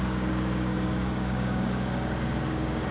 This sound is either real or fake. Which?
fake